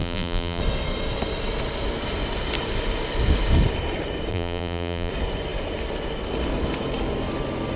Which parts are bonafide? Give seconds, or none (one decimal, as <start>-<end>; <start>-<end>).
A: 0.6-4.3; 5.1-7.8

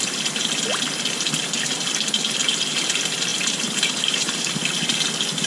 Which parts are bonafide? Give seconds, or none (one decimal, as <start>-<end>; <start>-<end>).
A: 0.0-2.4; 2.9-3.3; 4.5-5.5

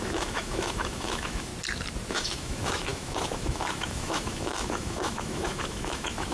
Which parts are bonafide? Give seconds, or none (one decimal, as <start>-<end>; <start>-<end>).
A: 1.5-2.1

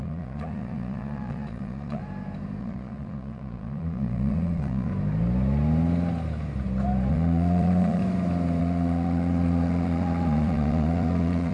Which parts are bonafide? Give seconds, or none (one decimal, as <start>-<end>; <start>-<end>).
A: 2.0-2.6; 4.9-7.1; 8.0-8.6

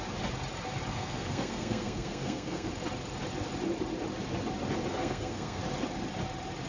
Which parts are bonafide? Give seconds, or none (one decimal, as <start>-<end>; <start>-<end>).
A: 0.0-0.9; 2.7-4.9; 5.6-6.7

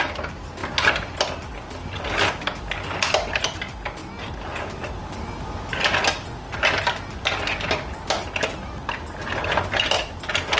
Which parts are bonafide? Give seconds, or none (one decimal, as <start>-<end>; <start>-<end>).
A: 0.0-9.2; 10.1-10.6